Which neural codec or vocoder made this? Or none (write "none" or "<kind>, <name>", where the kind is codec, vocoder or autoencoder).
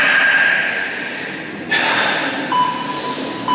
none